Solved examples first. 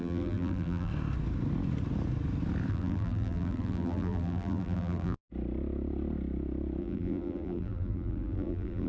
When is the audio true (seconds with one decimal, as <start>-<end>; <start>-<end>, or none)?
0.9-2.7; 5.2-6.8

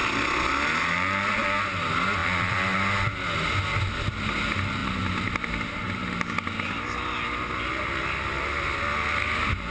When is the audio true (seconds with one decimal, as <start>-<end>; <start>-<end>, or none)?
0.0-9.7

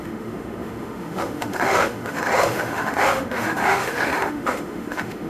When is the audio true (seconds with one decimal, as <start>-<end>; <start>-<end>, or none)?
none

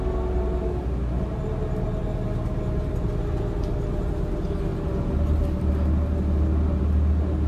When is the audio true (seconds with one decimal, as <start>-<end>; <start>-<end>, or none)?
0.0-7.5

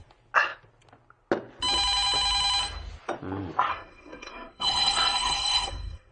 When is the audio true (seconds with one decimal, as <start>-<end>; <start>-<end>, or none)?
0.0-3.7

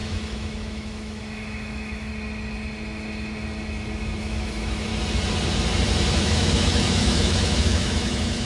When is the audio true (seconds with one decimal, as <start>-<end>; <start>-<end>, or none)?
2.1-4.2; 4.9-6.2

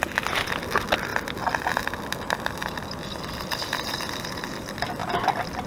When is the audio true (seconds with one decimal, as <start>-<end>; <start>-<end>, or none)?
0.0-1.1; 4.5-5.7

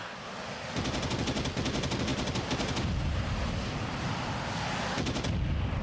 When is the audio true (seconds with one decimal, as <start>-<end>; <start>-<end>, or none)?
0.0-5.8